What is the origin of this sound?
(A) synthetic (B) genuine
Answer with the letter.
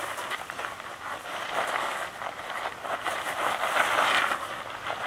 B